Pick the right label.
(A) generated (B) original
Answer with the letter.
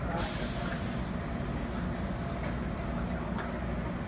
B